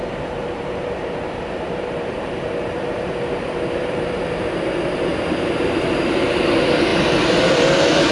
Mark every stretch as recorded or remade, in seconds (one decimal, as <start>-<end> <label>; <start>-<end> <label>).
0.0-4.5 remade; 4.5-5.1 recorded; 5.1-6.0 remade; 6.0-8.1 recorded